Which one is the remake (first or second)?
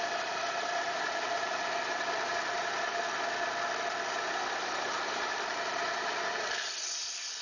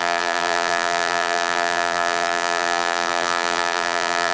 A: second